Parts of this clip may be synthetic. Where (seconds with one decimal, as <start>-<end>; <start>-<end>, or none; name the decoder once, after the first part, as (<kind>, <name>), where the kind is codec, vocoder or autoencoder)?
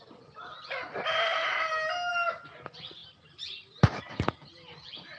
none